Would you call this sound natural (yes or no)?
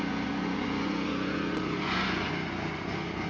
no